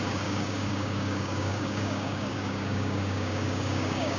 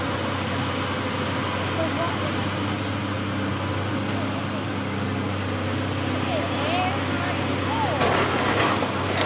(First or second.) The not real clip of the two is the first